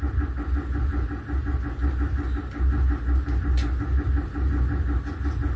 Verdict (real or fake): real